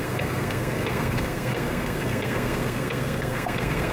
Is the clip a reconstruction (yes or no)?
yes